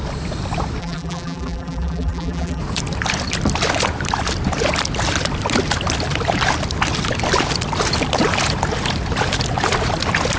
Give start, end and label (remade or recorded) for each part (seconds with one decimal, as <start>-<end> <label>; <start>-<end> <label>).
0.0-0.8 recorded; 0.8-2.6 remade; 2.6-10.4 recorded